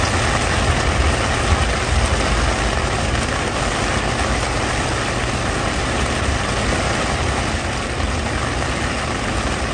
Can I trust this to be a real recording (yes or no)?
yes